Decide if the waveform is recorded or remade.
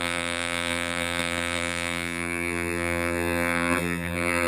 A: remade